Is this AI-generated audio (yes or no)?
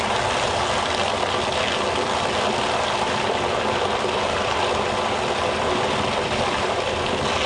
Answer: no